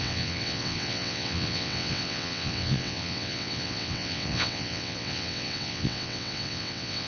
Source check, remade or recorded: remade